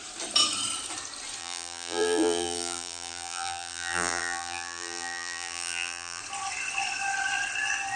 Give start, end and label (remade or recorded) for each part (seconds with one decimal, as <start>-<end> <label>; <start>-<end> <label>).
0.0-1.4 recorded; 1.4-6.2 remade; 6.2-8.0 recorded